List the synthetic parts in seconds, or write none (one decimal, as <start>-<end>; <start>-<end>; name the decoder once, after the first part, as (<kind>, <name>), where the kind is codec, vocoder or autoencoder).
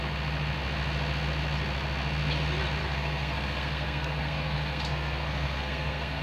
2.8-6.2 (codec, SNAC)